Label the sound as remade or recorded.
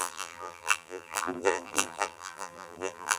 remade